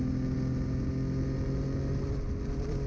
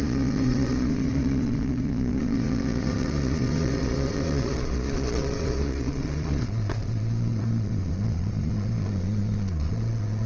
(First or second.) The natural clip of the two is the first